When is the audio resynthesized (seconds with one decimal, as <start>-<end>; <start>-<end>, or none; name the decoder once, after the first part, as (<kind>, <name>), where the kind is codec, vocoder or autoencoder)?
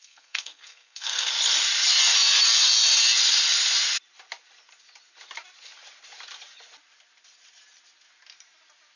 0.0-1.3 (codec, SNAC)